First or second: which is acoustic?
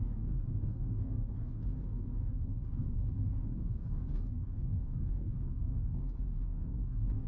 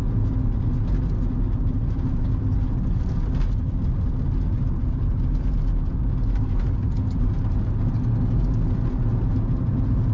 second